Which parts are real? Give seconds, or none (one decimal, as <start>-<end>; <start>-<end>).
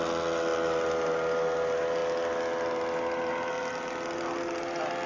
0.0-5.1